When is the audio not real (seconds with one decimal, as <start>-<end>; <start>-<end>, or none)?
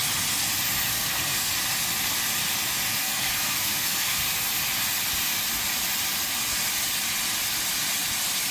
0.9-1.5; 3.0-4.2